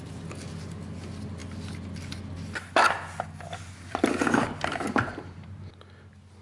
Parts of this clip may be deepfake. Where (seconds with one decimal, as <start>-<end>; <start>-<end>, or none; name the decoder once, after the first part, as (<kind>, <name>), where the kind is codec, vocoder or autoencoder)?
none